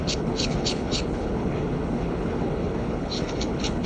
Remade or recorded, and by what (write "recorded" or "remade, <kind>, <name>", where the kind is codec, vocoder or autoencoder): remade, codec, HILCodec